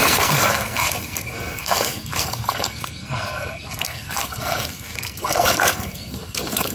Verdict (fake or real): fake